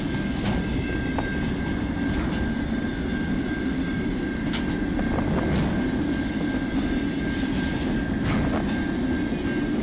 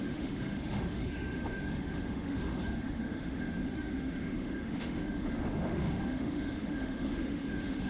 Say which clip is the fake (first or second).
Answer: second